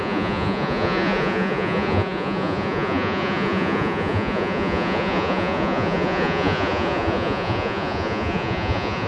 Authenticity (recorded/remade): remade